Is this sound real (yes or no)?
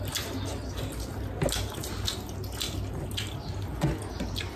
yes